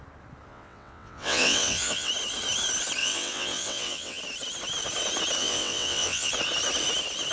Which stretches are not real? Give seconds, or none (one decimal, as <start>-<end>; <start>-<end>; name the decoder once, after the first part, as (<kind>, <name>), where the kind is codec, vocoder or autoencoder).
0.5-2.1 (vocoder, WaveNeXt); 3.0-4.2; 5.4-6.3